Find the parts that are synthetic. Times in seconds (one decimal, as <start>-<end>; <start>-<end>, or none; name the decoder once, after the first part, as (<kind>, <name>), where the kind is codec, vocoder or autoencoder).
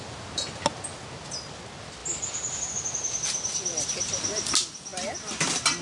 none